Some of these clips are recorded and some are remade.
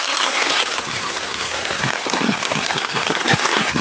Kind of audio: remade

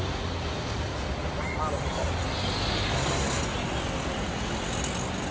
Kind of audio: recorded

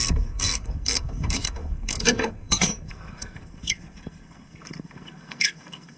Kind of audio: remade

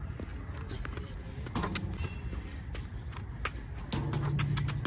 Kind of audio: recorded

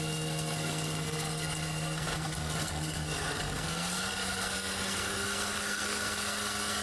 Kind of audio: remade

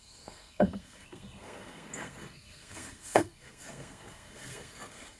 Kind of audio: remade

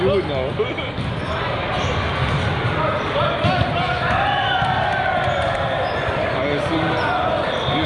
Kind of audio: recorded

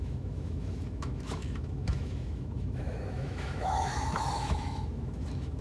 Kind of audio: remade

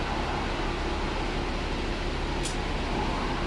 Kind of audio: recorded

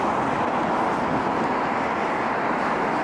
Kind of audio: recorded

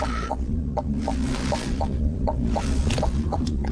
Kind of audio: remade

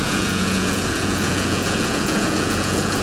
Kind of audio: remade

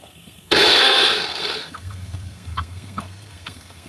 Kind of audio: remade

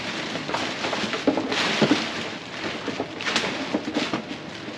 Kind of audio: recorded